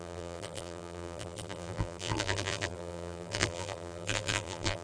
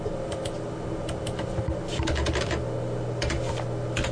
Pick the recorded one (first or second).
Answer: second